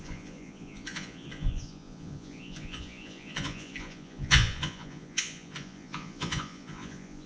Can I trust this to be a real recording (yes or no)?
no